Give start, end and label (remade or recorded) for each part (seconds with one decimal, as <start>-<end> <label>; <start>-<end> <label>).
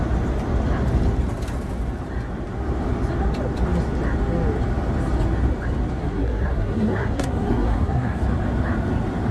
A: 0.0-6.0 recorded; 6.0-8.2 remade; 8.2-9.3 recorded